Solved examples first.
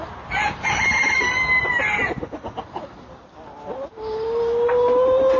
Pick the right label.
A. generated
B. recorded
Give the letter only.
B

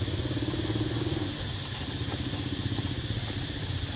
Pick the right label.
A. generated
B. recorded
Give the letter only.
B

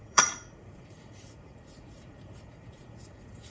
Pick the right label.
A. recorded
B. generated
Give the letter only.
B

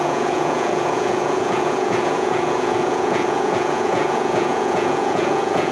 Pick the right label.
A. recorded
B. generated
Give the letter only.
B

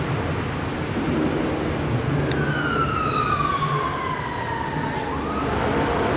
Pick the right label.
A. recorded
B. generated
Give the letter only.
A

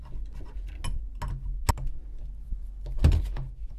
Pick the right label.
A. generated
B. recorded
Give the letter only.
B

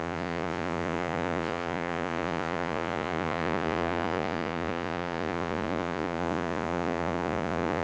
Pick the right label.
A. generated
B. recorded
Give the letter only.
A